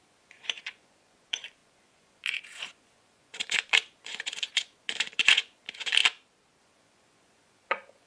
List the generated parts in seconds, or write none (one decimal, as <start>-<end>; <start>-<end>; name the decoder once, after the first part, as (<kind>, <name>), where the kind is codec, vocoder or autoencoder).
0.0-6.0 (vocoder, Vocos); 6.6-8.1